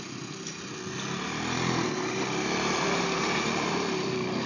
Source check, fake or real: real